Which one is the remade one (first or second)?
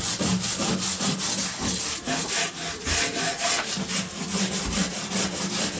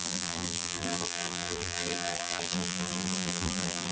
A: second